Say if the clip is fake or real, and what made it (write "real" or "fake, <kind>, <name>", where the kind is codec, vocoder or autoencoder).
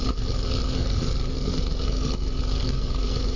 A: fake, codec, SNAC